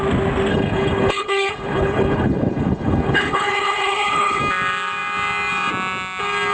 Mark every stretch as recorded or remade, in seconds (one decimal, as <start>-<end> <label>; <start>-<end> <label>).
0.0-0.5 recorded; 0.5-4.4 remade; 4.4-6.5 recorded